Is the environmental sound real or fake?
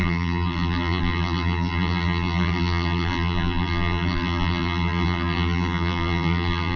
fake